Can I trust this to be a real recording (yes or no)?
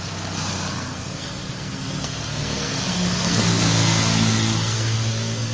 no